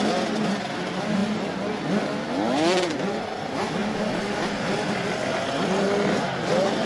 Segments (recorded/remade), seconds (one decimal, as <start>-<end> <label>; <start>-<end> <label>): 0.0-6.9 recorded